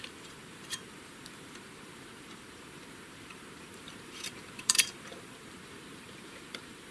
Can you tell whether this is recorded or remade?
remade